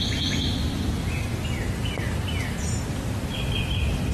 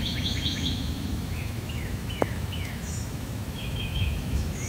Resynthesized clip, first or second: second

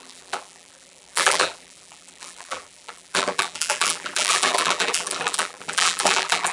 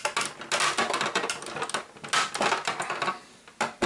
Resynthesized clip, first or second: first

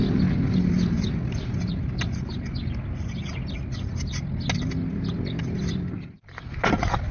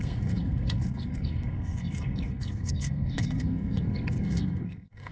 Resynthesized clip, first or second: second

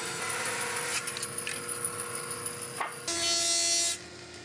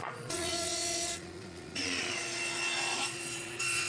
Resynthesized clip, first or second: second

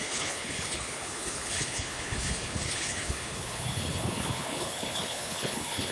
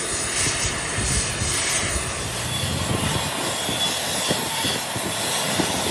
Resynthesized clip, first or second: first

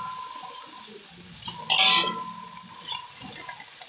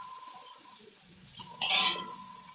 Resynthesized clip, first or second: second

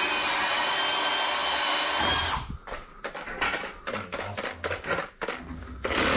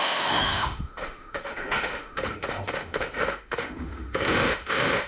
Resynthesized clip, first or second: second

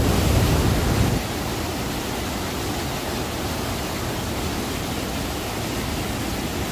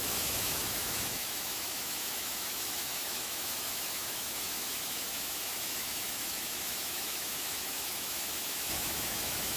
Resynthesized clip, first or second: second